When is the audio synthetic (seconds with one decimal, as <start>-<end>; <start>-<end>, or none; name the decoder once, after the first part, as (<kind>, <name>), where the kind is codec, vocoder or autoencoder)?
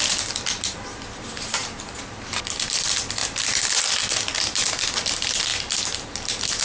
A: 3.2-3.7 (vocoder, BigVGAN v2)